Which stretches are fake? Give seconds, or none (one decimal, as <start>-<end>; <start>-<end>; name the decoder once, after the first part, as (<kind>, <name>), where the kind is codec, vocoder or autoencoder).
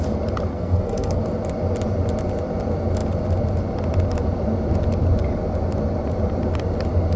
0.5-1.2 (codec, SNAC)